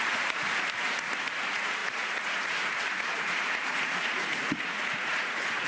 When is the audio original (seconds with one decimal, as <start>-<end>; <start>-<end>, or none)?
none

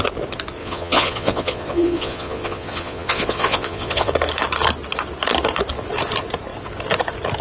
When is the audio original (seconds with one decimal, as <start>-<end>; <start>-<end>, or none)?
0.0-0.6; 4.1-7.4

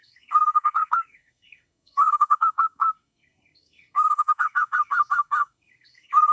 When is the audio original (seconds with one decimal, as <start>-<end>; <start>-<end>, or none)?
none